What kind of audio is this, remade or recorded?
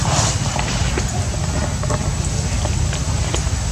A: recorded